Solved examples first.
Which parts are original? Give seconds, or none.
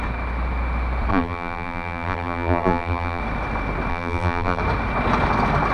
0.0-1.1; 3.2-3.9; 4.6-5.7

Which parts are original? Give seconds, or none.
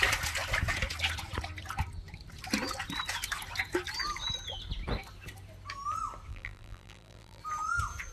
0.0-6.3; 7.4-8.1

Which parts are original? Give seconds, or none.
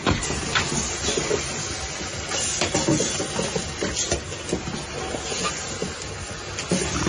0.0-7.1